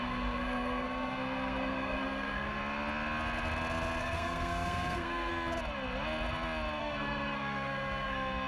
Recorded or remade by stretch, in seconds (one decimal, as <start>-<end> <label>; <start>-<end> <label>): 0.0-2.6 remade; 2.6-4.0 recorded; 4.0-5.3 remade; 5.3-6.8 recorded; 6.8-8.5 remade